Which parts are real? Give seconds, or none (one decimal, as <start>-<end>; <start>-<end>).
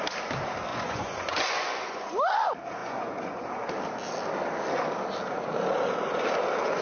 0.0-0.7; 2.1-2.8; 3.7-6.8